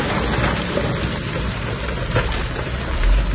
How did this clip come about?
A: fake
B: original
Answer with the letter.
B